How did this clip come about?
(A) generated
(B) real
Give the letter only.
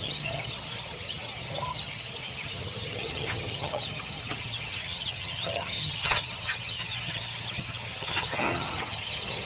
A